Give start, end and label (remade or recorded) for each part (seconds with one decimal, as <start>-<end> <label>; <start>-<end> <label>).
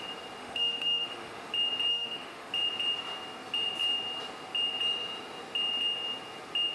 0.0-0.4 recorded; 0.4-1.5 remade; 1.5-1.9 recorded; 1.9-2.5 remade; 2.5-6.7 recorded